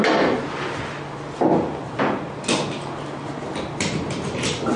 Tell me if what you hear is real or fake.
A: real